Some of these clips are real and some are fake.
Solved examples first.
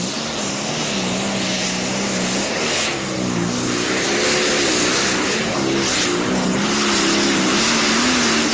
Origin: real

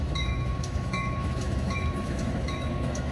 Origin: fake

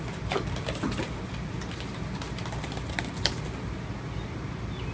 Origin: real